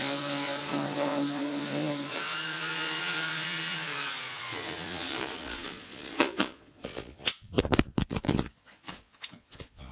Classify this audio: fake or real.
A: fake